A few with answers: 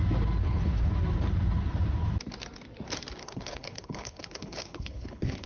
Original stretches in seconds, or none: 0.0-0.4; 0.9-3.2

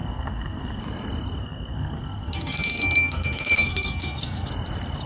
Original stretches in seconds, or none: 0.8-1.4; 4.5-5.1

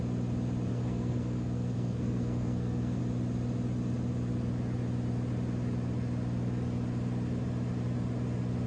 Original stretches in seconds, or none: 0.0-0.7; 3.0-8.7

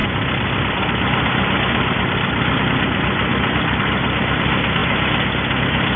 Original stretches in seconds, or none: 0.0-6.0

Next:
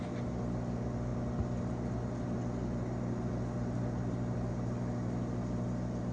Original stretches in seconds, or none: 0.0-6.1

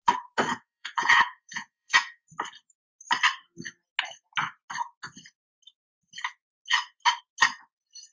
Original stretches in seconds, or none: 0.0-0.5; 2.3-8.1

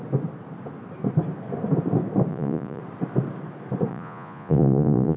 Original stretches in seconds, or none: 0.0-2.3; 2.8-3.9

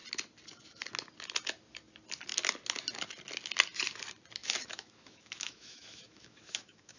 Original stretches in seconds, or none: 0.0-4.4